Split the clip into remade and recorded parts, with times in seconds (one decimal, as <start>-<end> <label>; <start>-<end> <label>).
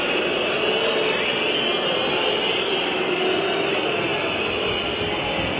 0.0-5.6 recorded